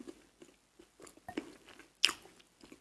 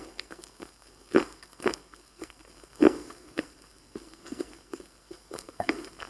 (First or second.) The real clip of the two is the first